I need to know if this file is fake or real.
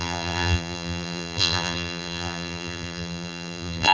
fake